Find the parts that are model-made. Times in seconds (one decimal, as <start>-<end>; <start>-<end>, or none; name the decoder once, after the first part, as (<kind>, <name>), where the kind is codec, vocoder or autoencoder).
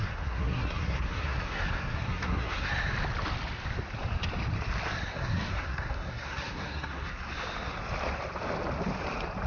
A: 0.0-2.7 (codec, SNAC); 5.1-7.1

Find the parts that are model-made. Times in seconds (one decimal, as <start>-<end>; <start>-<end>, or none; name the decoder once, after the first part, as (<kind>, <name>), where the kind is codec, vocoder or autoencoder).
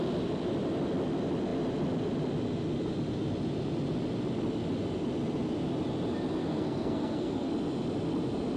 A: 6.4-7.5 (codec, SNAC)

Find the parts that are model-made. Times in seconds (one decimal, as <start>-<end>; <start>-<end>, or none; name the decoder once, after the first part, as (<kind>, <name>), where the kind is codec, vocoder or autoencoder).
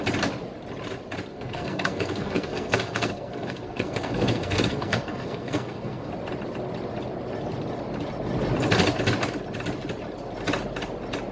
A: 1.3-6.1 (codec, SNAC)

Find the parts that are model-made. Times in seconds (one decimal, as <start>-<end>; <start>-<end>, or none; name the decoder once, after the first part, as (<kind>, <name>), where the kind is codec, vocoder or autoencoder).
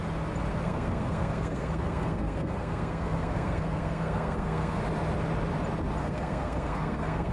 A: 0.5-4.8 (codec, SNAC); 6.0-7.3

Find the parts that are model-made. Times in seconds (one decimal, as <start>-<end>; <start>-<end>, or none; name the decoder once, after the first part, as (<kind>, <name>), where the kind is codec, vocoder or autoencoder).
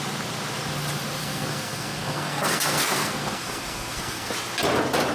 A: 1.2-4.3 (codec, SNAC)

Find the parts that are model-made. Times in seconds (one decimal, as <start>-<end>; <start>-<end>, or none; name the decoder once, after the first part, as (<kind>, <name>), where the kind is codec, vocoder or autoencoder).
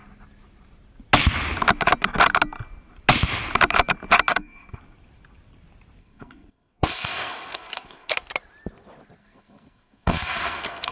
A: 4.3-4.8 (codec, SNAC); 6.0-8.1; 9.2-10.9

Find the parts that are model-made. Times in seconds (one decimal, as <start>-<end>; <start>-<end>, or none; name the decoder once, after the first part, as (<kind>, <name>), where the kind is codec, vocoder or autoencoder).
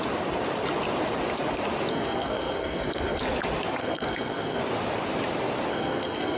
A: 1.9-3.2 (codec, SNAC); 3.8-4.6; 5.7-6.4